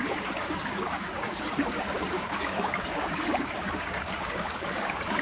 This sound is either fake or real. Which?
fake